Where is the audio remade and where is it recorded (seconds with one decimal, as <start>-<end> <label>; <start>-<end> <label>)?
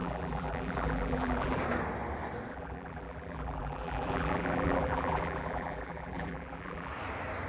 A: 0.0-1.6 remade; 1.6-2.5 recorded; 2.5-6.9 remade; 6.9-7.5 recorded